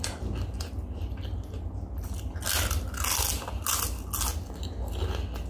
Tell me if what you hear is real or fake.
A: real